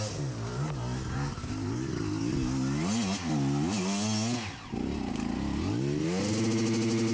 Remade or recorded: recorded